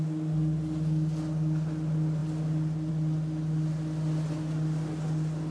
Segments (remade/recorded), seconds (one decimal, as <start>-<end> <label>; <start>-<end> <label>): 0.0-5.5 recorded